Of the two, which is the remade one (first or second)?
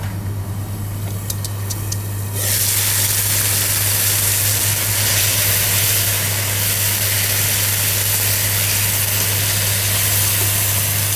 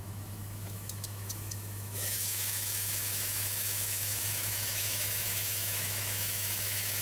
second